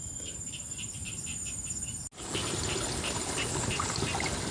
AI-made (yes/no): no